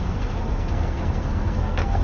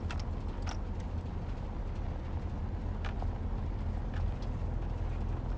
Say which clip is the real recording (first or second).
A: second